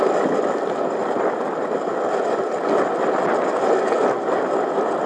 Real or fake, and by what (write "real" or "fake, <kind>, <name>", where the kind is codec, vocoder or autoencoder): real